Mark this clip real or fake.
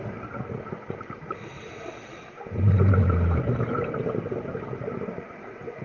real